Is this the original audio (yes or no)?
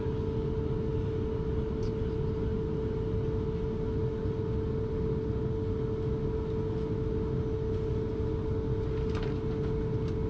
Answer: yes